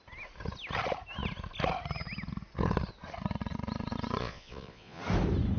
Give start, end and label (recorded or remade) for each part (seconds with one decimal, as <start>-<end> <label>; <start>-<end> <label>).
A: 0.0-4.2 recorded; 4.2-5.0 remade; 5.0-5.6 recorded